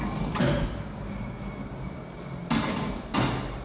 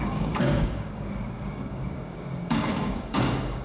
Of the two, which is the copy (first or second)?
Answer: second